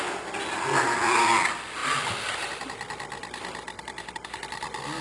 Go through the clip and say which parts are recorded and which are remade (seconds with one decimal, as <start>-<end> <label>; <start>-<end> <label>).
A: 0.0-5.0 recorded

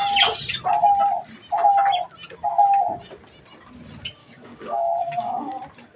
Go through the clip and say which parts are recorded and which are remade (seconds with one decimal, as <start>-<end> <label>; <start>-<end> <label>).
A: 0.0-4.2 recorded; 4.2-5.5 remade; 5.5-6.0 recorded

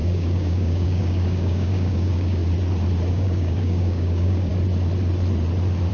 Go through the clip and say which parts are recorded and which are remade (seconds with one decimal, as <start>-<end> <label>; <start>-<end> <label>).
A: 0.0-2.4 remade; 2.4-3.1 recorded; 3.1-4.5 remade; 4.5-5.9 recorded